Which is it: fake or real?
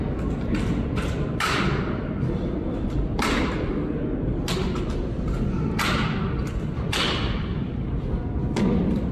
real